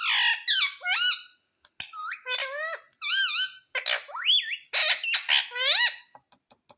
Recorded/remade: recorded